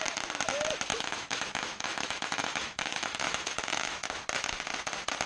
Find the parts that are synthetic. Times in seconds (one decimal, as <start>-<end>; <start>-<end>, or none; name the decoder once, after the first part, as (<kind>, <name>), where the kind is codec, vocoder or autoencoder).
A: 0.9-4.1 (autoencoder, DAC-VAE)